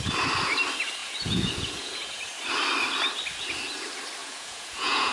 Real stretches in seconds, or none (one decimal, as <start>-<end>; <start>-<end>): 0.0-1.0; 2.2-4.2